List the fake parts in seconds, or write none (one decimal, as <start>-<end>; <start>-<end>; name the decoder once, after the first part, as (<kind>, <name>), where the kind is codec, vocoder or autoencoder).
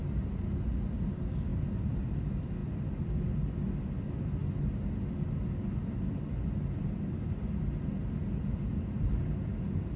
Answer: 1.5-2.1 (vocoder, BigVGAN v2); 2.6-3.6